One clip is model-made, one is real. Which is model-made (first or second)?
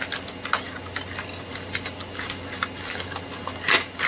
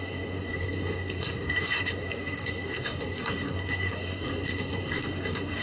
second